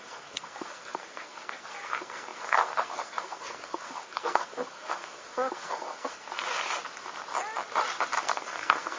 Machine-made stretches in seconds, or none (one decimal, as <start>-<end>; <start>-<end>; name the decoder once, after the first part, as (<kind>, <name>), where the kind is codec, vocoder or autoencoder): 0.0-6.4 (codec, SNAC); 8.2-9.0